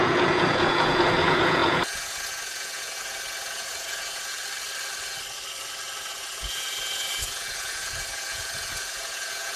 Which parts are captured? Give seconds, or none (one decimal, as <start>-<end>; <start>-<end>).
4.4-6.0